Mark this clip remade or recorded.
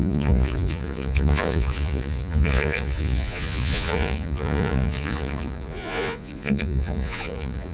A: remade